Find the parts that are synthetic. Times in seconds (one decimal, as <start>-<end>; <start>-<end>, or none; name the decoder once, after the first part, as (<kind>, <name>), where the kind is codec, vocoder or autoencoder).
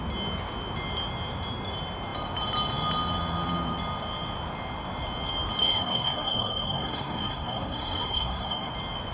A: 5.6-8.7 (codec, SNAC)